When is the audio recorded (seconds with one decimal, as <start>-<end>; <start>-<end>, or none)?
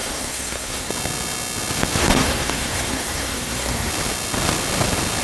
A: 0.9-2.0; 3.9-5.2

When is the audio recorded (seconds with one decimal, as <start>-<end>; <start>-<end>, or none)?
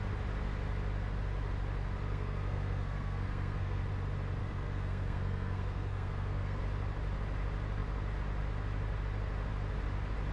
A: 0.0-2.1; 3.8-4.4; 6.6-10.3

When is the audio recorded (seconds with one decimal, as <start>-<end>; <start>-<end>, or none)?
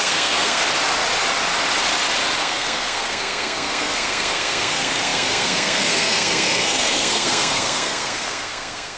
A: 0.6-2.4